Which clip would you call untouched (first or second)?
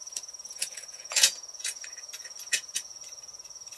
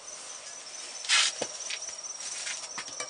second